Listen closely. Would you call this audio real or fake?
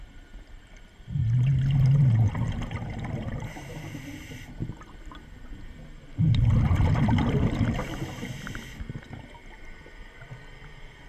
real